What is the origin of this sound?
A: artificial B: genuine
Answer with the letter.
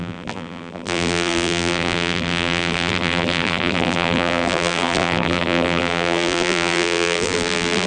A